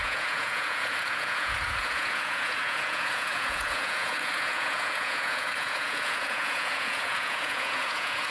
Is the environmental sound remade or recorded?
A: remade